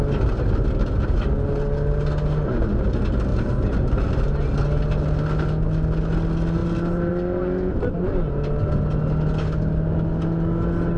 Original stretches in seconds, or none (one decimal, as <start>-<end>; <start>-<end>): 0.0-3.3; 4.0-6.6; 7.1-11.0